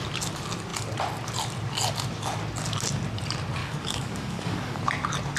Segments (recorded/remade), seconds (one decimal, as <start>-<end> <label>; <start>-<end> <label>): 0.0-3.6 recorded; 3.6-4.8 remade; 4.8-5.4 recorded